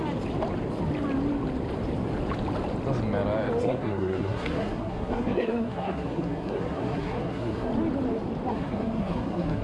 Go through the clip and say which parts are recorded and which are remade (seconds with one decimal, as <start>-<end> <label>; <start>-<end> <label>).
0.0-3.6 recorded; 3.6-7.7 remade; 7.7-8.5 recorded; 8.5-9.6 remade